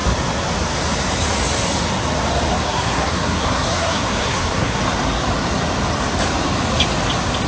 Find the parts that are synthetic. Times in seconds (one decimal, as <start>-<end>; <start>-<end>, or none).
2.5-4.8